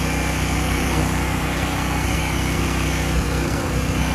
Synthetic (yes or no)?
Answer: yes